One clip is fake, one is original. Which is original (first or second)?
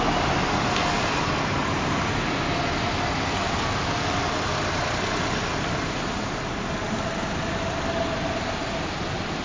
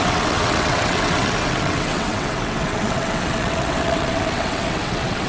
first